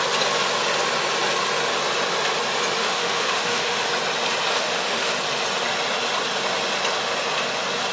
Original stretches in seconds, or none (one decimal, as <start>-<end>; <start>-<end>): 0.0-2.8; 3.9-4.5; 5.1-7.9